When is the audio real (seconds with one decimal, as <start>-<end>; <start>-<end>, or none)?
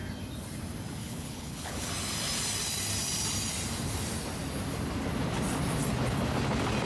0.0-1.0; 1.9-6.9